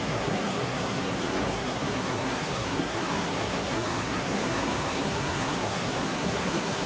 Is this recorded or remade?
remade